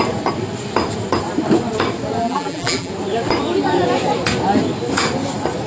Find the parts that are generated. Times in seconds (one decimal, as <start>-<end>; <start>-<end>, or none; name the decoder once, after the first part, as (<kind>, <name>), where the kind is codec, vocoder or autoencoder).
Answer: 2.2-2.9 (vocoder, BigVGAN v2)